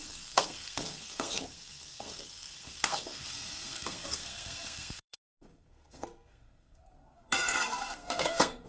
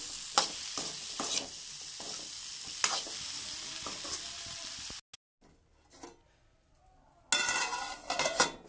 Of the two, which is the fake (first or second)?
first